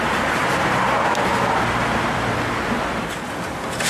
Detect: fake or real real